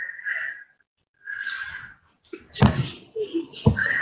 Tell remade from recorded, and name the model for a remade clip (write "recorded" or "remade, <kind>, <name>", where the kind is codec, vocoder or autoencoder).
recorded